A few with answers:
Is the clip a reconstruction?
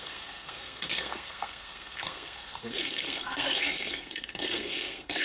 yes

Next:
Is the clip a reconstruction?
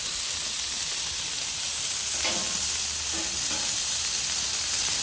yes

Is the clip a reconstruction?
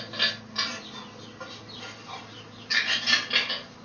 no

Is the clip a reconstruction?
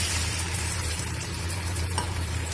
yes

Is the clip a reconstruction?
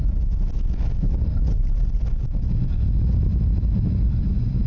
no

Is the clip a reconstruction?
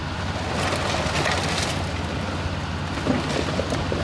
no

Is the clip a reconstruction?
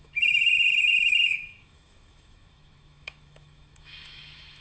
yes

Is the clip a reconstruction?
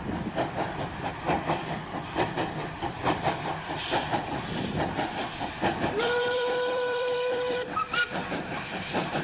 yes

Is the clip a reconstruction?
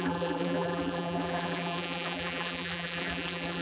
yes